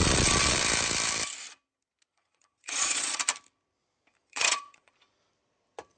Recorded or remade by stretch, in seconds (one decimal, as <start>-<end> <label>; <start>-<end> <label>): 0.0-0.6 remade; 0.6-2.1 recorded; 2.1-3.2 remade; 3.2-4.2 recorded; 4.2-4.9 remade; 4.9-6.0 recorded